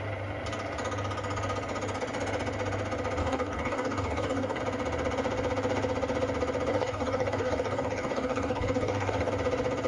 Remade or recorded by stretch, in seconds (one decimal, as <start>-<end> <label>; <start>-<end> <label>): 0.0-3.2 recorded; 3.2-4.6 remade; 4.6-6.7 recorded; 6.7-9.3 remade; 9.3-9.9 recorded